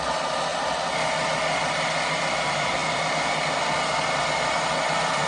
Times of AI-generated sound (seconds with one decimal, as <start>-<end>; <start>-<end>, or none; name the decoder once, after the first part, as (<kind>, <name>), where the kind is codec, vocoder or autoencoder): none